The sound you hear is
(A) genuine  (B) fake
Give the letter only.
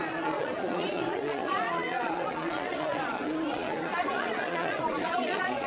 B